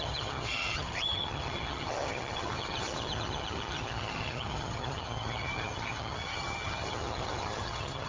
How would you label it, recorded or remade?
remade